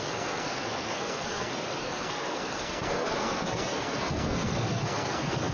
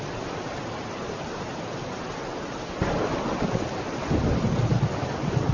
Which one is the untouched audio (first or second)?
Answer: second